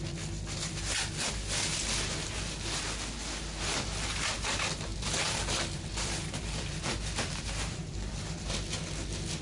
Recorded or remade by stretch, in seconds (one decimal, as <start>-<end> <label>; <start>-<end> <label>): 0.0-4.9 recorded; 4.9-9.4 remade